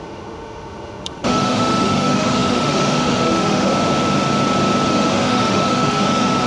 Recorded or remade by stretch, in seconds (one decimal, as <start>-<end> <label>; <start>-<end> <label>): 0.0-3.7 remade; 3.7-4.9 recorded; 4.9-6.5 remade